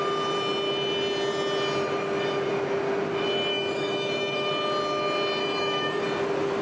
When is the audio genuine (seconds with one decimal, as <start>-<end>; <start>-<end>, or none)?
0.0-3.5; 4.5-5.4; 6.0-6.6